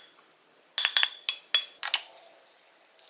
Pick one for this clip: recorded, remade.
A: recorded